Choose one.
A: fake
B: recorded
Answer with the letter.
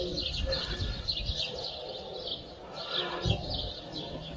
B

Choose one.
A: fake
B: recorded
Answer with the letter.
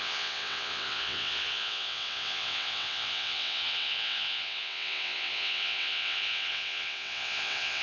A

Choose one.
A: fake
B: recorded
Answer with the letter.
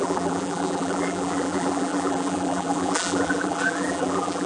A